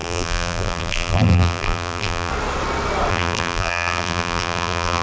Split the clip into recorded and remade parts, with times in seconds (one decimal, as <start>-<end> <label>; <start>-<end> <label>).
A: 0.0-2.3 remade; 2.3-3.1 recorded; 3.1-5.0 remade